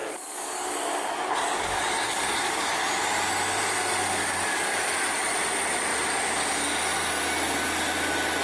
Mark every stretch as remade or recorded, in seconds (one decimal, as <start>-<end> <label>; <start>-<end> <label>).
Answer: 0.0-2.7 remade; 2.7-4.2 recorded; 4.2-4.9 remade; 4.9-8.4 recorded